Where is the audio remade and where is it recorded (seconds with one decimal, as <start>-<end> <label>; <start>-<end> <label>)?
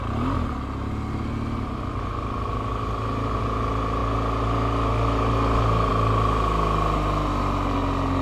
0.0-8.2 recorded